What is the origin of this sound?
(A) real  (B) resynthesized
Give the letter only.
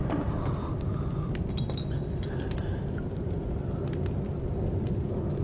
A